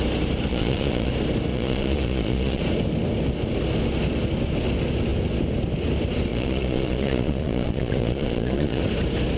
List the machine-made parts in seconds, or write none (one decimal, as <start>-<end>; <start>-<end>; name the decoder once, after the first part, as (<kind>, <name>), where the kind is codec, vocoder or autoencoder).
0.5-1.1 (vocoder, Vocos); 1.5-2.6; 6.3-8.8